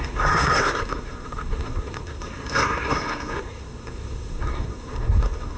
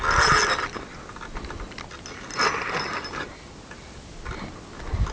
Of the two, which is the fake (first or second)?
first